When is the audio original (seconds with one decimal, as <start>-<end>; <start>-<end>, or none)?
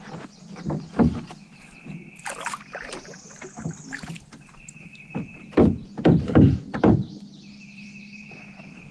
2.0-4.1